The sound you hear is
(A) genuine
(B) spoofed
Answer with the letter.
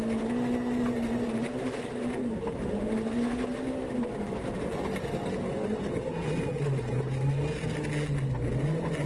A